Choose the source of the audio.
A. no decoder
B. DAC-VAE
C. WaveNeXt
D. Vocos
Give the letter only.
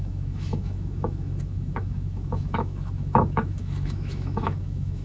B